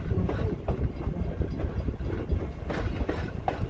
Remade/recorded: recorded